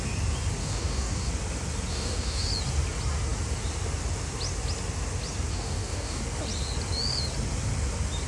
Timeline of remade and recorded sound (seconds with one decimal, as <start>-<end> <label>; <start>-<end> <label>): 0.0-0.6 recorded; 0.6-1.3 remade; 1.3-1.9 recorded; 1.9-2.5 remade; 2.5-5.5 recorded; 5.5-6.2 remade; 6.2-8.3 recorded